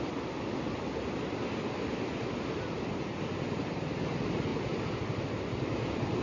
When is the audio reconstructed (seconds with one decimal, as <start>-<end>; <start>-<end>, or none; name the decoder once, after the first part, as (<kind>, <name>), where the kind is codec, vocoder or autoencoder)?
none